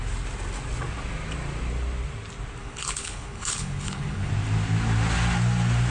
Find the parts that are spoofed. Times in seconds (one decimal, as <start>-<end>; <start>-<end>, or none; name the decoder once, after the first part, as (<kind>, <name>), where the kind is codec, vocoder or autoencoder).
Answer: 2.6-4.3 (codec, HILCodec)